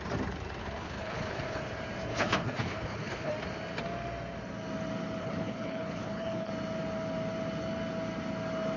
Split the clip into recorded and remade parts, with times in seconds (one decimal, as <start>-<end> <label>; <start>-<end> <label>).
0.0-0.6 recorded; 0.6-1.6 remade; 1.6-2.1 recorded; 2.1-3.3 remade; 3.3-5.2 recorded; 5.2-6.5 remade; 6.5-8.8 recorded